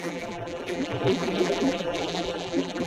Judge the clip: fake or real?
fake